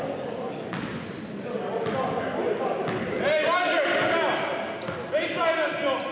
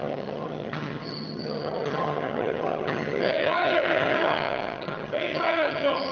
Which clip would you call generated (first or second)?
second